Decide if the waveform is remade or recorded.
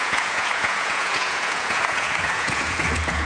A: remade